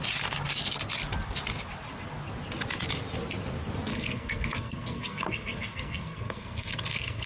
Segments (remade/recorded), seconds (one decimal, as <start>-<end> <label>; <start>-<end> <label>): 0.0-3.9 recorded; 3.9-7.3 remade